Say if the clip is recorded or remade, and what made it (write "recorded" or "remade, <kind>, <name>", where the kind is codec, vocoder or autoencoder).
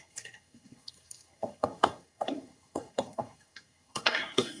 remade, codec, SNAC